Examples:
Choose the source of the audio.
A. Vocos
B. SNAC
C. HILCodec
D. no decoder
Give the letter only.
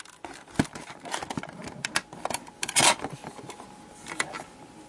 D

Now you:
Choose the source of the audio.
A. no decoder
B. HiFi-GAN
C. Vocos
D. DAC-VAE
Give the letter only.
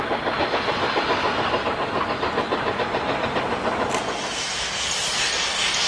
A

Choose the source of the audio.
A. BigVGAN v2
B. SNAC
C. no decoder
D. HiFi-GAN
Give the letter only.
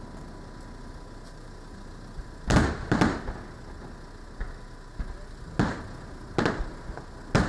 C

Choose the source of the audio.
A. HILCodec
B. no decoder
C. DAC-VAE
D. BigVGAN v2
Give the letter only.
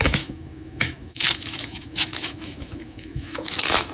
C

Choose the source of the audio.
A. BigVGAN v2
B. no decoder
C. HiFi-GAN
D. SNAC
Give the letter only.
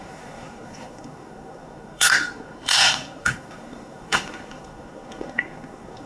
D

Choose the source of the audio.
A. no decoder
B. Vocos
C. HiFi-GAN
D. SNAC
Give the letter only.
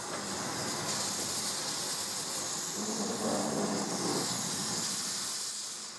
A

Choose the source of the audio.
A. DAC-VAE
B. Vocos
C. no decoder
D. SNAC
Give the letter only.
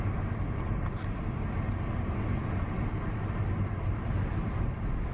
C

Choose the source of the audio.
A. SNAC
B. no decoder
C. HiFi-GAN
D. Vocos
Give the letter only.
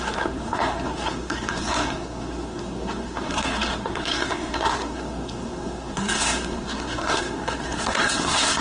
A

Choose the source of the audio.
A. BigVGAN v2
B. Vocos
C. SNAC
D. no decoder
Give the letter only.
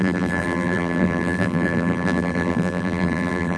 A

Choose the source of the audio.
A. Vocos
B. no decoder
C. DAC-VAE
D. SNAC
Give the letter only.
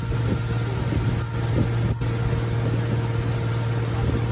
B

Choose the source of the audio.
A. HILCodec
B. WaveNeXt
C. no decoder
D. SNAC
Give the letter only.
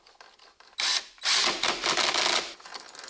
C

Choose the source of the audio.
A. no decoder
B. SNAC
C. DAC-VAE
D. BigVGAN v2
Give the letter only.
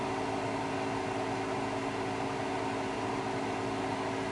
A